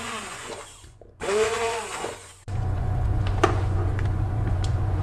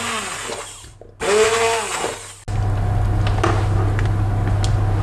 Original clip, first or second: second